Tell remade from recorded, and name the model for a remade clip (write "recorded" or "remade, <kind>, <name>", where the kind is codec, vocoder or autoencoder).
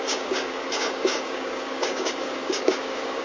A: remade, codec, DAC